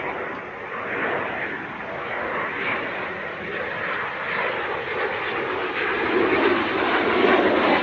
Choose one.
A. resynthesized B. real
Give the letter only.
B